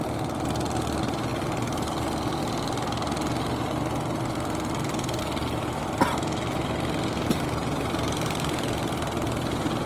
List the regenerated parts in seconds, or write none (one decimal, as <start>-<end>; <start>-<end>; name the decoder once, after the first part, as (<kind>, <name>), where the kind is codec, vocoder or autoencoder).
7.6-9.9 (vocoder, BigVGAN v2)